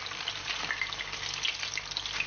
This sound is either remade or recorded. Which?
recorded